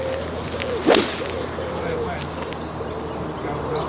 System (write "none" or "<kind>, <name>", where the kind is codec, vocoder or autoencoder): none